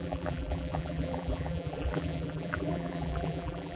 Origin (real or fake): fake